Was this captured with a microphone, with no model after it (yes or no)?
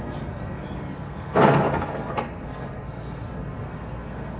no